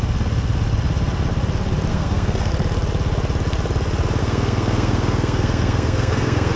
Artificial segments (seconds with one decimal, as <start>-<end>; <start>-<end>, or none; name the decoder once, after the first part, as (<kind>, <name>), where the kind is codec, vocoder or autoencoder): 1.9-2.5 (codec, SNAC); 4.2-6.6